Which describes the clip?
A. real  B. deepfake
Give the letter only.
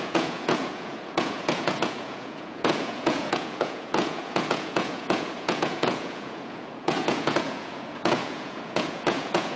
B